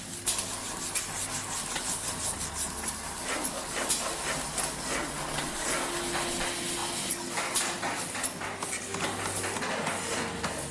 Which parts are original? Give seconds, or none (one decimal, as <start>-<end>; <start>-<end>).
0.0-10.7